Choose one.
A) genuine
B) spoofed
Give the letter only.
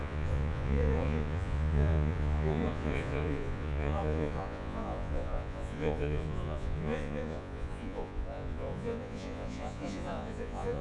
B